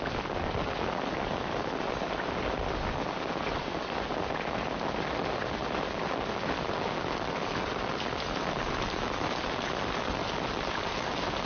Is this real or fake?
real